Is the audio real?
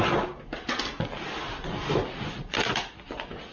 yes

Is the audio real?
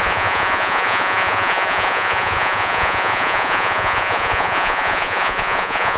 no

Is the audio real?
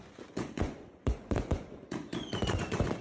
no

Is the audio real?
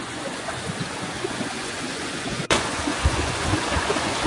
no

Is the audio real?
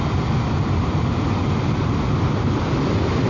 yes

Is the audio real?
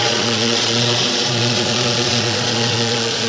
no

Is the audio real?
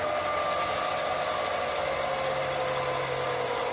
yes